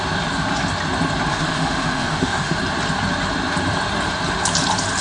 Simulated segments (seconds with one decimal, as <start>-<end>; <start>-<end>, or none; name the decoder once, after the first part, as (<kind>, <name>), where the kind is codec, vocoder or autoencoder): 1.3-2.6 (autoencoder, DAC-VAE)